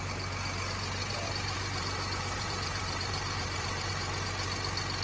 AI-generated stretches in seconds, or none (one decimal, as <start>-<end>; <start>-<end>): 1.0-3.9